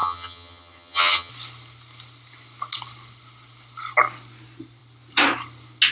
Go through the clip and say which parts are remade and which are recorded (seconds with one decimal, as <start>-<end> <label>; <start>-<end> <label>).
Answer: 0.0-1.3 remade; 1.3-5.9 recorded